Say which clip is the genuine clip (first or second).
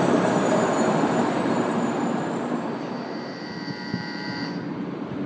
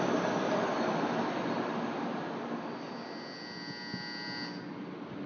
second